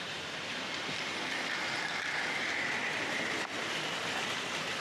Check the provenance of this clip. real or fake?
fake